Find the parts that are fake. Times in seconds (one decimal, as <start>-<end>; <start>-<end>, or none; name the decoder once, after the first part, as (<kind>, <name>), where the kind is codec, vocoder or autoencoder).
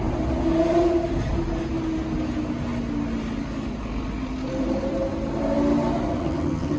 6.2-6.8 (vocoder, HiFi-GAN)